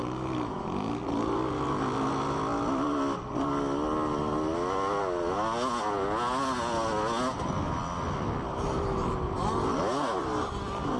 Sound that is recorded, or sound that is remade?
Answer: recorded